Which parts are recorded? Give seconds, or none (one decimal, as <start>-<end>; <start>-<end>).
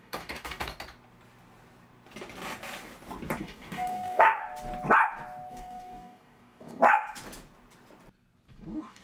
0.7-3.4; 4.4-5.5; 6.8-8.5